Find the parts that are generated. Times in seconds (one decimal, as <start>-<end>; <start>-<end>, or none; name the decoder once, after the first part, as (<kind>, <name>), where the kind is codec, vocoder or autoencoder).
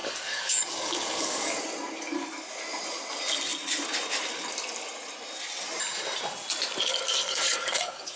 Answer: 0.0-1.6 (codec, DAC); 7.2-8.2